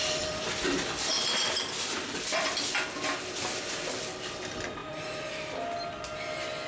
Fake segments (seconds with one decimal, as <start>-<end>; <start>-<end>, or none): 0.0-2.7